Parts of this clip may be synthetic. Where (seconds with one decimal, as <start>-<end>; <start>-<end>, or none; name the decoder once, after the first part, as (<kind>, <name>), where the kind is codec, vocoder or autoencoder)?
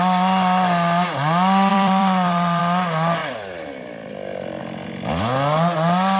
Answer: 1.7-2.6 (vocoder, BigVGAN v2); 3.2-4.1